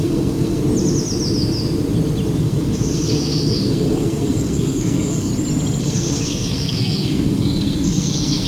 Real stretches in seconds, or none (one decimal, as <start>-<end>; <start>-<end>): 0.6-2.4; 5.3-5.8